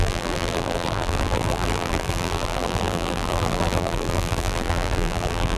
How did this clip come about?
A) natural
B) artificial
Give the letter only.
B